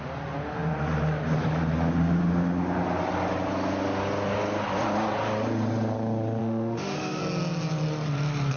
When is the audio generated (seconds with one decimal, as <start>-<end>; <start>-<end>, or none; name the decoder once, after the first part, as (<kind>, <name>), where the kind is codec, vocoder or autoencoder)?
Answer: 6.4-7.2 (autoencoder, DAC-VAE)